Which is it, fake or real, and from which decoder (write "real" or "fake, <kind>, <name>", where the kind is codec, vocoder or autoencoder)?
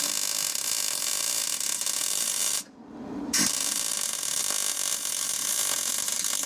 real